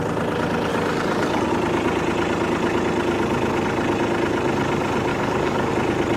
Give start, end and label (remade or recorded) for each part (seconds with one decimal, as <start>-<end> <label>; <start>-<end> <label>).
0.0-0.7 recorded; 0.7-1.5 remade; 1.5-5.1 recorded; 5.1-5.7 remade; 5.7-6.2 recorded